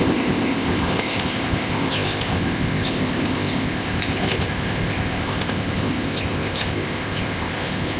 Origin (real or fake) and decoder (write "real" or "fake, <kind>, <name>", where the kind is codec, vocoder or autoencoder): fake, codec, ZipCodec